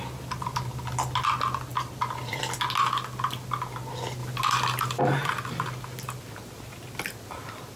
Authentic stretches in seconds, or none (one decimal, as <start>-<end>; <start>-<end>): 0.0-1.7; 2.4-7.8